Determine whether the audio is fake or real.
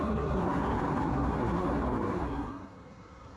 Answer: fake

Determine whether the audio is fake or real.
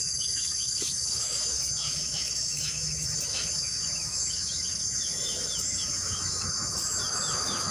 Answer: fake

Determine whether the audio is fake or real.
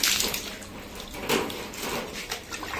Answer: real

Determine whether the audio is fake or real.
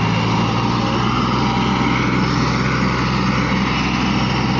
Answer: real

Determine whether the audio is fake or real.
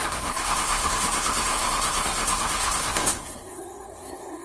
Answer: fake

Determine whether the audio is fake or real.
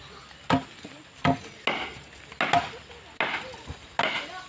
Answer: real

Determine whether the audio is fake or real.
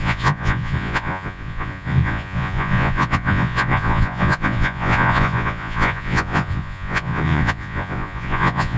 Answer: fake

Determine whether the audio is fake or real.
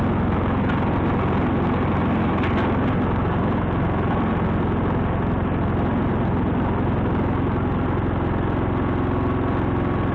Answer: real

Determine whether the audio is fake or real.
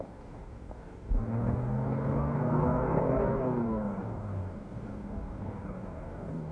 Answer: fake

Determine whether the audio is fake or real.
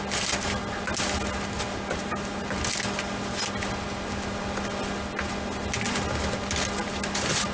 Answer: real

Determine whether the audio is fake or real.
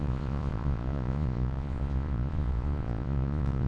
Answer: fake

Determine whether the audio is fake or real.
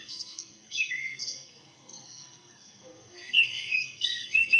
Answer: fake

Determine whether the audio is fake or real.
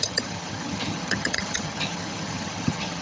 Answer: fake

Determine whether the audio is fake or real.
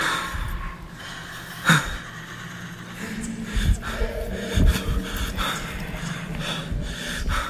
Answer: real